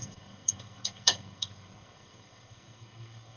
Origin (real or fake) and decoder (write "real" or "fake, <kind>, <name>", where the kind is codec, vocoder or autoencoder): fake, codec, SNAC